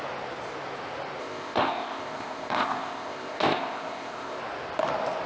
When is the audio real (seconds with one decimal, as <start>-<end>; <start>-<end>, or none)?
0.0-1.2; 4.4-5.3